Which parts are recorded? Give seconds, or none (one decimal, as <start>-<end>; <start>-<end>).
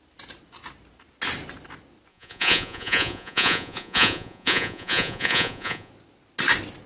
0.0-2.1; 5.9-6.9